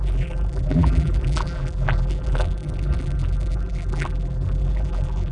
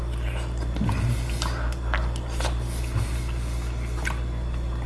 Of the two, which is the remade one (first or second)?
first